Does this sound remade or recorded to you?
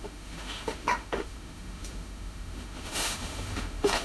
remade